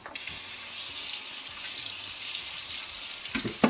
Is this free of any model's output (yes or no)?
yes